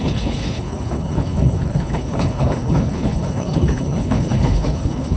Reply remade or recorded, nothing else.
remade